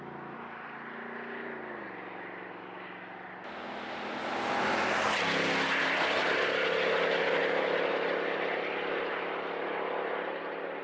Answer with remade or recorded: recorded